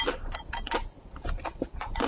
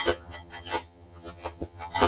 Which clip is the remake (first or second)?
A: second